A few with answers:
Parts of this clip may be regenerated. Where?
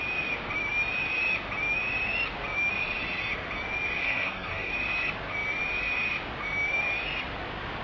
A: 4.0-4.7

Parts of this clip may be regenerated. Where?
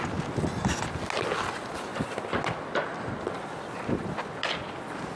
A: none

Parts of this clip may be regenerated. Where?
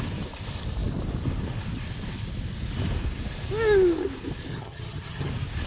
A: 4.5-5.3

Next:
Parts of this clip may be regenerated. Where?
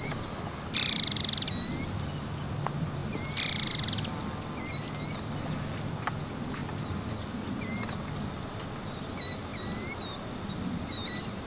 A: none